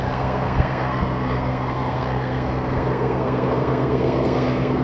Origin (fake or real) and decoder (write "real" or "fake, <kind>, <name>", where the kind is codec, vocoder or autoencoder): fake, codec, SNAC